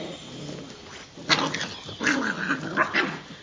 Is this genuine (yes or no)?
yes